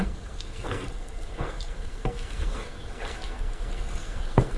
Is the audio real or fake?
fake